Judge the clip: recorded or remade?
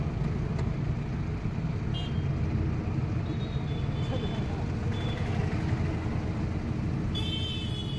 recorded